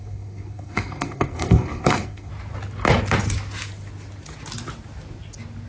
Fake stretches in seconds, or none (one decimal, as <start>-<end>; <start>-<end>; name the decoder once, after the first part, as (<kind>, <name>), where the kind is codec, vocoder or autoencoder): 0.0-2.3 (codec, SNAC)

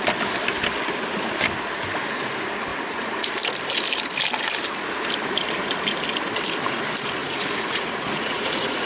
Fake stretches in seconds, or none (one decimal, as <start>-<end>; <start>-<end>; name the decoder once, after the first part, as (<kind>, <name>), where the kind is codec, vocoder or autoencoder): 2.7-3.3 (vocoder, Vocos); 7.2-8.9

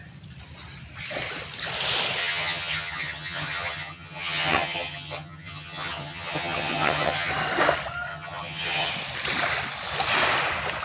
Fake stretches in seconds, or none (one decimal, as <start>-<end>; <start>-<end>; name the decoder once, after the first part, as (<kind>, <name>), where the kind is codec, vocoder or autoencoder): 2.2-7.3 (vocoder, HiFi-GAN); 8.1-8.9

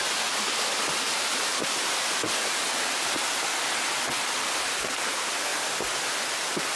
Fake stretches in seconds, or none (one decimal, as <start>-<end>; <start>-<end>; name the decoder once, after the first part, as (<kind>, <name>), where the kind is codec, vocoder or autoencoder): none

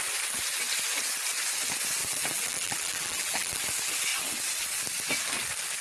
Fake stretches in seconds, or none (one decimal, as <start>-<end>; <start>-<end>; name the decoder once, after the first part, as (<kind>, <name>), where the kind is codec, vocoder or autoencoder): 2.0-3.6 (vocoder, BigVGAN v2)

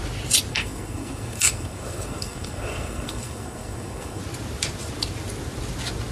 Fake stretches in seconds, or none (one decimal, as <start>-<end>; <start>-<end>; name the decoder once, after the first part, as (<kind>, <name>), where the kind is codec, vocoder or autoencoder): 0.5-4.2 (codec, SNAC)

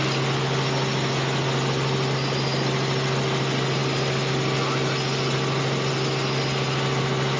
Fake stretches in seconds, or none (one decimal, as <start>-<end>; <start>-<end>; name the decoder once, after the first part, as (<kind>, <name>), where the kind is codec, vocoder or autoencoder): none

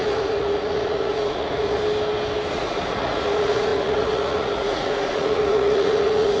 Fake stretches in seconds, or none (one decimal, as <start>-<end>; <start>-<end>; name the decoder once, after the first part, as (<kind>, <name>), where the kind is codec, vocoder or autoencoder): 0.0-1.8 (vocoder, Vocos); 2.5-6.4